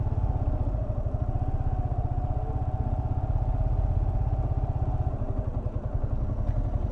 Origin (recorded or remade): recorded